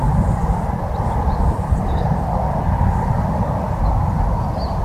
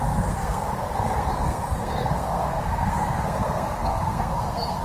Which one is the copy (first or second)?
second